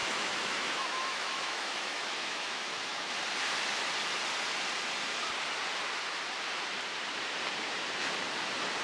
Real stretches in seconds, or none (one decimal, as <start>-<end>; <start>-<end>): 3.1-8.8